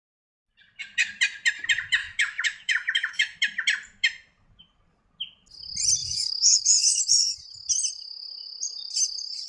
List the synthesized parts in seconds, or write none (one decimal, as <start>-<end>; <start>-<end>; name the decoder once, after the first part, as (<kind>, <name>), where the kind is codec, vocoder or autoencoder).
2.0-3.4 (autoencoder, DAC-VAE); 6.0-7.0